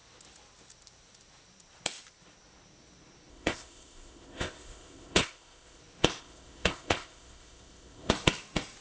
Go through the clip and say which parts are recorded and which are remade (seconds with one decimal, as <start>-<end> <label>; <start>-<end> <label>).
0.0-3.3 recorded; 3.3-5.8 remade; 5.8-6.2 recorded; 6.2-8.1 remade; 8.1-8.8 recorded